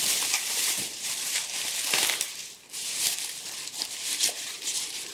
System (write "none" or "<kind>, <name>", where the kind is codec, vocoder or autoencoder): vocoder, BigVGAN v2